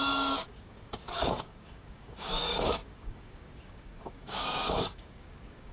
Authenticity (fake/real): fake